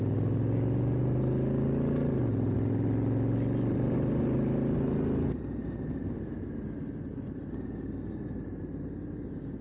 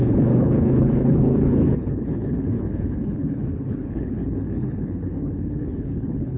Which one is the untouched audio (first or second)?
first